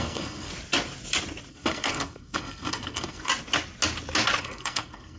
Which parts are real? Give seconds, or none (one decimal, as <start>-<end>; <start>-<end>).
0.5-1.5; 3.3-4.4